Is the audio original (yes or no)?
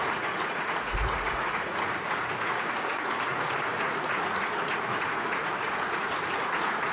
no